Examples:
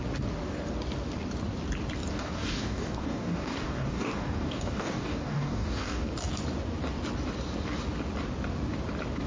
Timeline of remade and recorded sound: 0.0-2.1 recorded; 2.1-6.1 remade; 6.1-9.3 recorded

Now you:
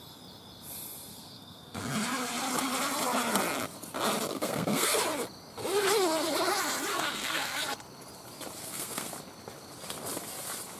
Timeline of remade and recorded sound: 0.0-1.1 recorded; 1.1-1.8 remade; 1.8-4.3 recorded; 4.3-5.0 remade; 5.0-6.9 recorded; 6.9-7.6 remade; 7.6-8.6 recorded; 8.6-9.1 remade; 9.1-10.8 recorded